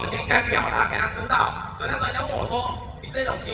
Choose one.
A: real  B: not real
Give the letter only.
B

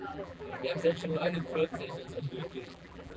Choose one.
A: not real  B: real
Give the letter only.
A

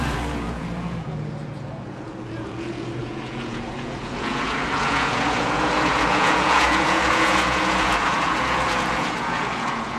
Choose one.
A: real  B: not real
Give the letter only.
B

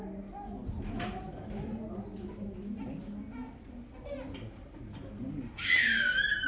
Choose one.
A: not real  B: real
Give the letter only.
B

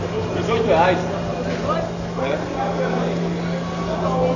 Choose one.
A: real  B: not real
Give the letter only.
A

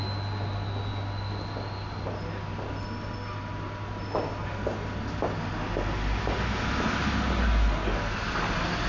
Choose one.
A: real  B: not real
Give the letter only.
A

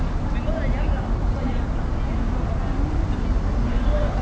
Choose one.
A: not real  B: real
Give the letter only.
B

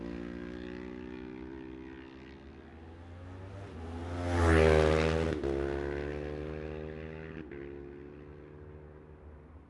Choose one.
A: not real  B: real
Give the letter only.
B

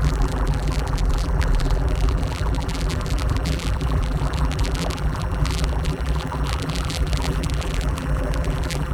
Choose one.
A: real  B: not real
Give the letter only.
B